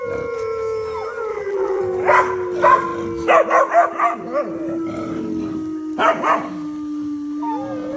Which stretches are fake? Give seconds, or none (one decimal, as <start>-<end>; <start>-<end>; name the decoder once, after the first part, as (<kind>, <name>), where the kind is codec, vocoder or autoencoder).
1.3-1.8 (vocoder, BigVGAN v2)